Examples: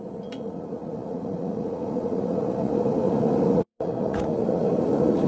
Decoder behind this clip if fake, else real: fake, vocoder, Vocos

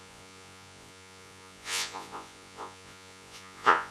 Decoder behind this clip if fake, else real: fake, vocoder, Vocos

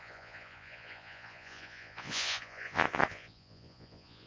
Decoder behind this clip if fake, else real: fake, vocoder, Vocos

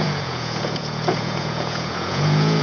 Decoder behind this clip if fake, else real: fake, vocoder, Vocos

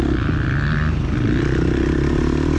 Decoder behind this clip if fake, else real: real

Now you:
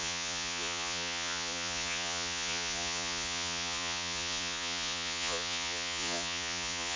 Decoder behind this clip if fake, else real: fake, vocoder, Vocos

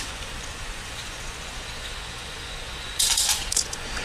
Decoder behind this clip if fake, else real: fake, vocoder, Vocos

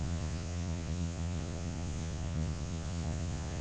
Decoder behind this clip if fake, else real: fake, vocoder, Vocos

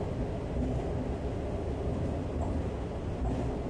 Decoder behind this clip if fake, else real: real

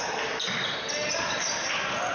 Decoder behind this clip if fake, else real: real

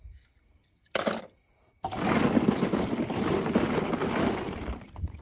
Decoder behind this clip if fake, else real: real